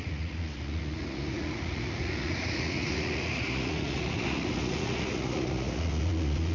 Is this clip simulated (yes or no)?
yes